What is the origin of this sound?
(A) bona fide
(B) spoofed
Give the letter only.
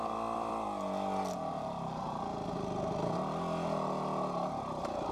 A